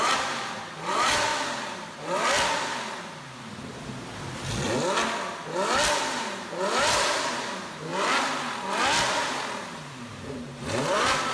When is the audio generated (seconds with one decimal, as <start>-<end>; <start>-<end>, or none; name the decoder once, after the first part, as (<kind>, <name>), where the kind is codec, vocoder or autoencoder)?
0.0-1.3 (vocoder, BigVGAN v2); 6.2-7.9; 9.9-11.3

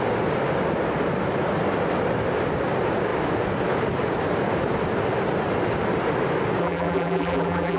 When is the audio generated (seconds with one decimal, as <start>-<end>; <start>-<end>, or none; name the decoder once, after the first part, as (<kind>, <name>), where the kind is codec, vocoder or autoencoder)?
6.6-7.8 (vocoder, BigVGAN v2)